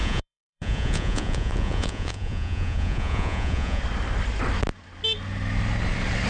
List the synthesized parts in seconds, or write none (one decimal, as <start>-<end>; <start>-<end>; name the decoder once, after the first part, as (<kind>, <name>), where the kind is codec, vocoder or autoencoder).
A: 0.0-3.8 (vocoder, Vocos)